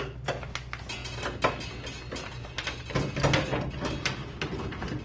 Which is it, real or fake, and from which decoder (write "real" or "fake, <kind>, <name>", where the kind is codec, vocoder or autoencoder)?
real